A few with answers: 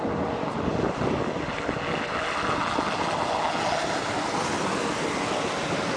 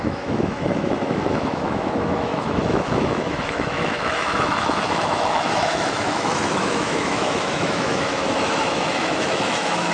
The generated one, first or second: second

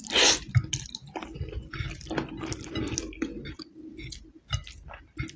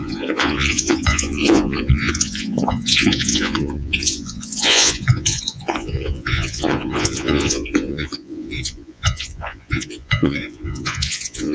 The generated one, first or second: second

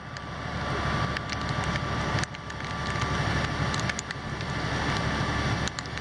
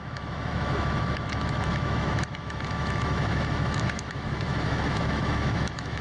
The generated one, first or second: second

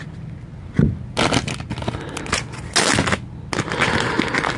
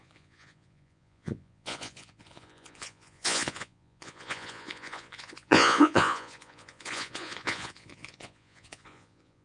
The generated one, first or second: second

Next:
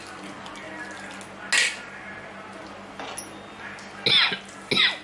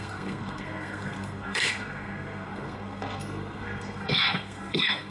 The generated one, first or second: second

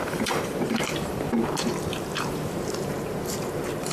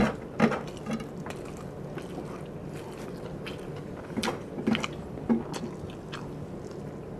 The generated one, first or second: first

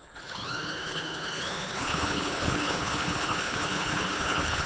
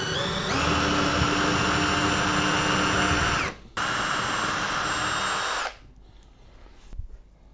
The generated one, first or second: first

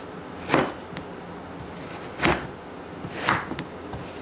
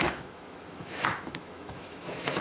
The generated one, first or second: second